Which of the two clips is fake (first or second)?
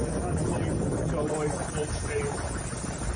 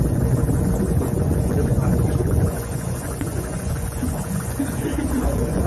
second